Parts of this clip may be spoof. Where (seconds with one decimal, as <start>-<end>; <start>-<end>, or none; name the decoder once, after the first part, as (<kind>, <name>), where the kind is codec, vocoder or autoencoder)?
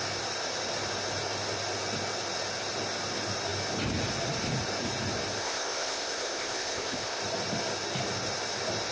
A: 5.4-7.2 (codec, ZipCodec)